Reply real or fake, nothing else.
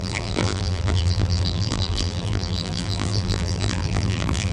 fake